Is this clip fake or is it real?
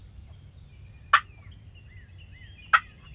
real